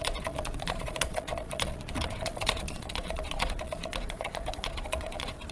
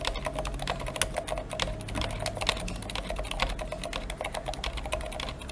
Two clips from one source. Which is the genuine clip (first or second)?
second